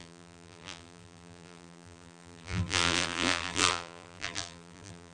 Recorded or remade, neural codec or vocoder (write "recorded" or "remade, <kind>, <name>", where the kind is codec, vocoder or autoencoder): remade, vocoder, BigVGAN v2